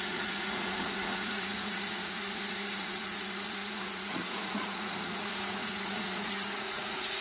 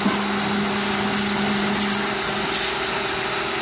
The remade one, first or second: first